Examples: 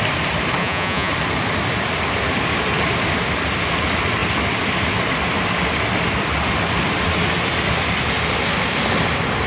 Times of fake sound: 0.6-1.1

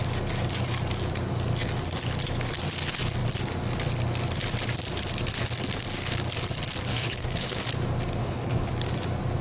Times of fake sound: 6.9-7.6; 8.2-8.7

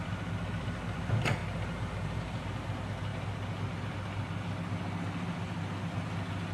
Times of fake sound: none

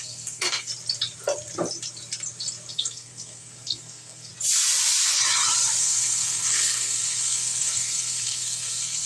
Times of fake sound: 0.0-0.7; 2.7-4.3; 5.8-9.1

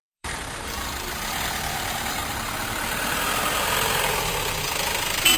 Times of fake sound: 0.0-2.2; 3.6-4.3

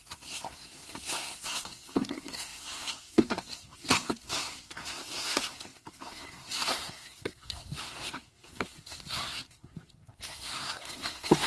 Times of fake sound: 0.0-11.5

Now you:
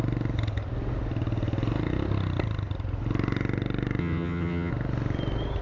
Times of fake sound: 4.0-4.7